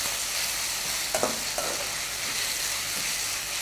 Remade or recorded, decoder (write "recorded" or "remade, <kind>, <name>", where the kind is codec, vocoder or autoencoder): recorded